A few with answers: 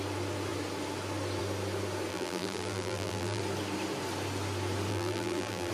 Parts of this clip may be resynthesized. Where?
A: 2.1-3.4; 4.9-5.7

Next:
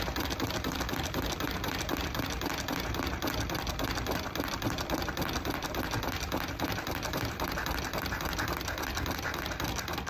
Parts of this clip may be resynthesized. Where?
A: 0.0-2.5; 3.3-10.1

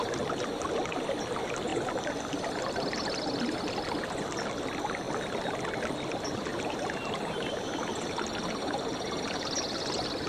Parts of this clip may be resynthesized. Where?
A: 6.5-8.4